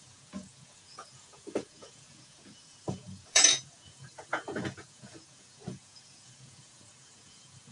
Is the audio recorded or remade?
remade